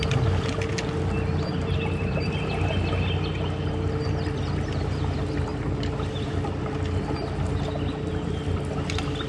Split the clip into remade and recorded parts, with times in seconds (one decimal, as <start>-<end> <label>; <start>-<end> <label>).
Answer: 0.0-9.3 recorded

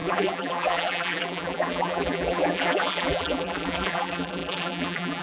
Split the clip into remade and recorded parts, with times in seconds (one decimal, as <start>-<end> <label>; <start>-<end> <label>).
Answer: 0.0-5.2 remade

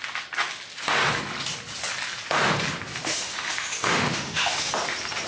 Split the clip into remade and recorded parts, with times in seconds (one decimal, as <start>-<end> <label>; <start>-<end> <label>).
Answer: 0.0-2.9 recorded; 2.9-4.7 remade; 4.7-5.3 recorded